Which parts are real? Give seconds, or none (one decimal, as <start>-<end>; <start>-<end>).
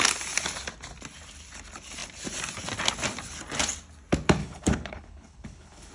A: 0.0-4.4